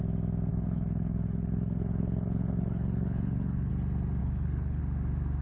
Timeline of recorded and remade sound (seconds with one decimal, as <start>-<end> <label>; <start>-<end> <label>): 0.0-0.5 recorded; 0.5-3.7 remade; 3.7-4.2 recorded; 4.2-4.8 remade; 4.8-5.4 recorded